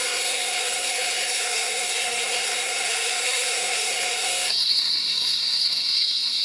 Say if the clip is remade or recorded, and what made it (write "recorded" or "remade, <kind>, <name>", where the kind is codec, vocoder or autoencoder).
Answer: remade, codec, SNAC